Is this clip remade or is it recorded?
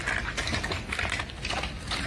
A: recorded